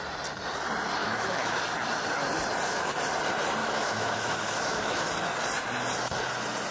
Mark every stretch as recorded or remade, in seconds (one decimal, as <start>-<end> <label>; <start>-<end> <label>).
0.0-1.0 recorded; 1.0-1.6 remade; 1.6-3.6 recorded; 3.6-5.1 remade; 5.1-6.7 recorded